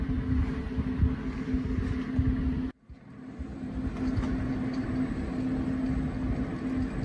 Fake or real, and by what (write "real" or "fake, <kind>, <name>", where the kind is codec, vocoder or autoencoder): real